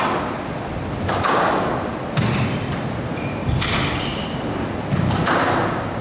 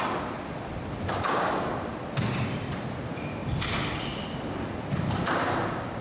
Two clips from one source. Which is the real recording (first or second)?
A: first